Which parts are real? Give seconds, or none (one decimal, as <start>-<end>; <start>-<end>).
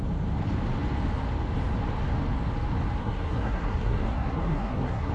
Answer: 0.0-3.0